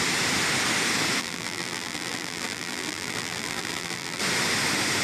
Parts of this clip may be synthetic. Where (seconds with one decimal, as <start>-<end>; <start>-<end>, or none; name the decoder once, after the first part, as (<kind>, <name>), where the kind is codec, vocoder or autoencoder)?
1.2-4.2 (vocoder, BigVGAN v2)